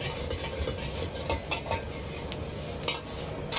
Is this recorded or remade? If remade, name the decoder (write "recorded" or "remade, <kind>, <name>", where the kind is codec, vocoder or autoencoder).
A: recorded